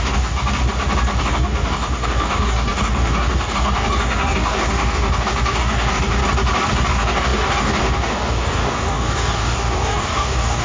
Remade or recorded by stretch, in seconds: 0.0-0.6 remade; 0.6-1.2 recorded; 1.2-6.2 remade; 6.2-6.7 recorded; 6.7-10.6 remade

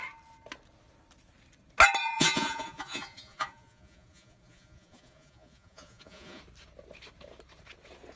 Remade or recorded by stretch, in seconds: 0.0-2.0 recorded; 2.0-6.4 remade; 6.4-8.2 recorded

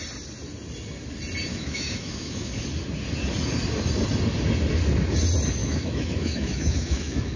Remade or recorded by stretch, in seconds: 0.0-1.5 recorded; 1.5-2.6 remade; 2.6-5.6 recorded; 5.6-7.4 remade

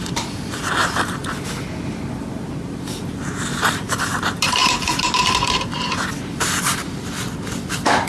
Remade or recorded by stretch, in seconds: 0.0-1.2 remade; 1.2-2.7 recorded; 2.7-6.8 remade; 6.8-8.1 recorded

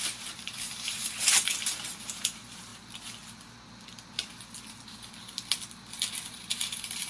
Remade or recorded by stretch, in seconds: 0.0-2.7 remade; 2.7-6.1 recorded; 6.1-7.1 remade